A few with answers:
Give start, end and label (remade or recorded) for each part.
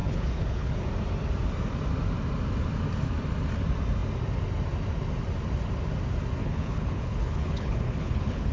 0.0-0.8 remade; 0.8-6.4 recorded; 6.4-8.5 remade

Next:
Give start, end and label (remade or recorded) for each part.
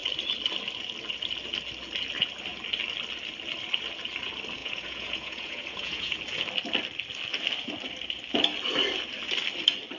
0.0-4.6 recorded; 4.6-6.2 remade; 6.2-10.0 recorded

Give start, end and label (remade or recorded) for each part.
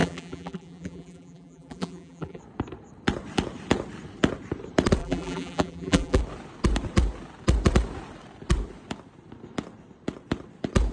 0.0-2.4 remade; 2.4-5.0 recorded; 5.0-6.2 remade; 6.2-10.9 recorded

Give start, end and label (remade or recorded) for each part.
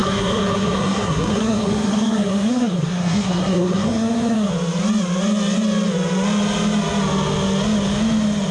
0.0-4.5 remade; 4.5-8.5 recorded